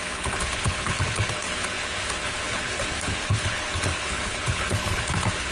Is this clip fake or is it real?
fake